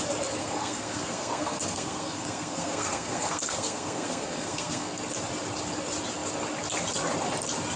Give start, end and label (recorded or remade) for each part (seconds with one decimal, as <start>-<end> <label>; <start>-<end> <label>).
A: 0.0-0.4 recorded; 0.4-5.0 remade; 5.0-7.8 recorded